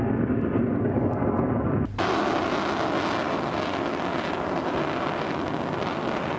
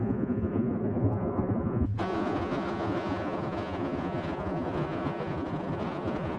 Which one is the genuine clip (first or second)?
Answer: first